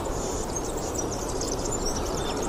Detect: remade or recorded remade